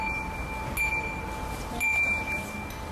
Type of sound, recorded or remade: recorded